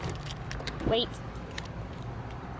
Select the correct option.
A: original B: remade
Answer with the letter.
B